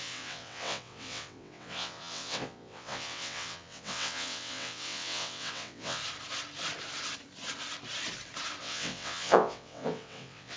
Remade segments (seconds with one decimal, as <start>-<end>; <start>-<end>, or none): 0.0-6.0; 8.6-10.6